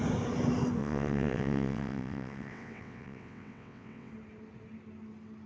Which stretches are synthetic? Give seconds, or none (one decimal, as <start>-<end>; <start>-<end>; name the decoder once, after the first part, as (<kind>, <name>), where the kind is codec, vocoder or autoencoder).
0.8-4.1 (vocoder, WaveNeXt)